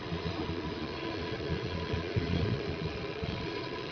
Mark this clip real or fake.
fake